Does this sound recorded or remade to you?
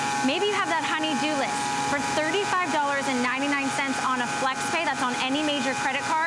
recorded